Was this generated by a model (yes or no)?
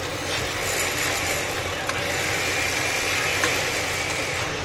no